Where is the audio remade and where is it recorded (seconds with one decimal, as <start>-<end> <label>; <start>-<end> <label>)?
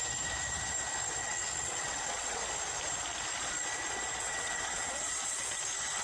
0.0-1.2 recorded; 1.2-2.4 remade; 2.4-4.2 recorded; 4.2-5.6 remade; 5.6-6.0 recorded